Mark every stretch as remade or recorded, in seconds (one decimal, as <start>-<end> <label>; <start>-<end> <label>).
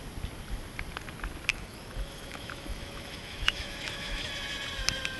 0.0-1.5 recorded; 1.5-4.3 remade; 4.3-5.2 recorded